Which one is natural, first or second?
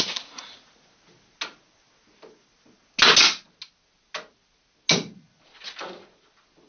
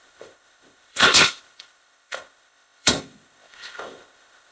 first